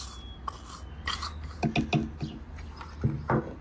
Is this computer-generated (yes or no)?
no